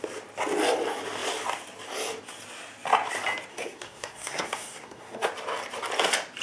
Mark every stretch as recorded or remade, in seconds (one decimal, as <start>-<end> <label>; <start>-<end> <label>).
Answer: 0.0-3.5 recorded; 3.5-5.3 remade; 5.3-6.4 recorded